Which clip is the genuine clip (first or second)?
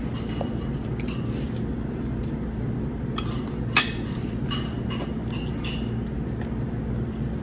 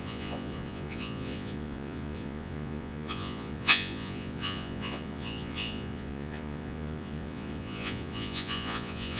first